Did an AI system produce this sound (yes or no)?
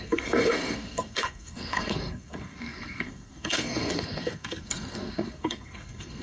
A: yes